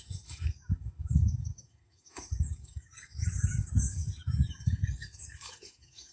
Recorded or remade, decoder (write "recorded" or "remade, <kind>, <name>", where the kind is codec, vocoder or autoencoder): remade, autoencoder, DAC-VAE